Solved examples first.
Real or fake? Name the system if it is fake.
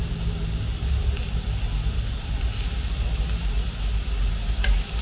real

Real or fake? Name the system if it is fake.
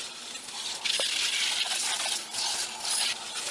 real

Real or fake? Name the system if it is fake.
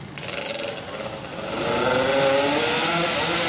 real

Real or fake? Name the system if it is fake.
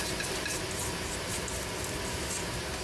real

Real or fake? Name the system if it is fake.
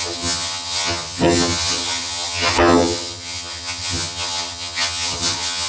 fake, vocoder, HiFi-GAN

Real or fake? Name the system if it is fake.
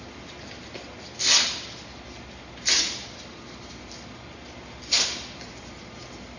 real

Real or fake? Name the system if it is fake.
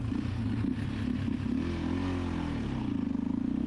real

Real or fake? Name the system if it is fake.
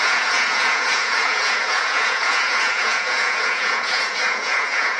fake, vocoder, Vocos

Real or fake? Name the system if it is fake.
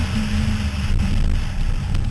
real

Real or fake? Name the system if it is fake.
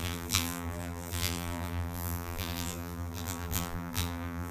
fake, vocoder, BigVGAN v2